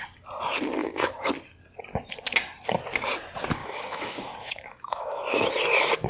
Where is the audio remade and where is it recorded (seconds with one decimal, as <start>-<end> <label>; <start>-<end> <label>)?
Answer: 0.0-0.8 recorded; 0.8-1.3 remade; 1.3-3.6 recorded; 3.6-5.5 remade; 5.5-6.1 recorded